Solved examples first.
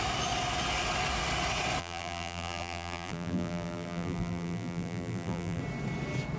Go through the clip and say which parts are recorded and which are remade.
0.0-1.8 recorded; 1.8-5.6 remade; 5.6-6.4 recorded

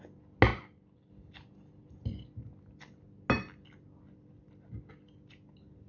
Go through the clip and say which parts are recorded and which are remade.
0.0-5.9 recorded

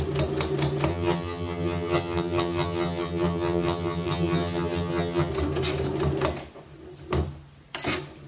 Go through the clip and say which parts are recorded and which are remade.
0.0-0.9 recorded; 0.9-5.3 remade; 5.3-8.3 recorded

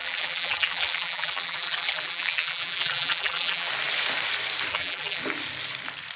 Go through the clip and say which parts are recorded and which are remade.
0.0-3.7 remade; 3.7-4.7 recorded; 4.7-5.2 remade; 5.2-6.2 recorded